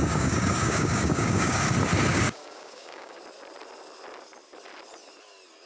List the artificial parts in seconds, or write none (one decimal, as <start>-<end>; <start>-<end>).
0.0-1.6; 2.1-3.2